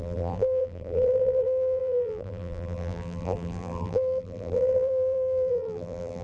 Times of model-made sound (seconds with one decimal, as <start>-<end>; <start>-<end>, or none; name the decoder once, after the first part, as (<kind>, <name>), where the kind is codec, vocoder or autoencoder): 0.0-6.2 (vocoder, BigVGAN v2)